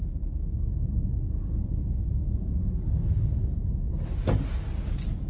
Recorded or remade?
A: recorded